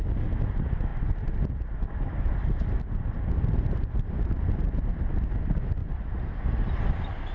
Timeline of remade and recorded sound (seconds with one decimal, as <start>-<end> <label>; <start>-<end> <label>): 0.0-0.9 recorded; 0.9-5.3 remade; 5.3-5.8 recorded; 5.8-6.5 remade; 6.5-7.3 recorded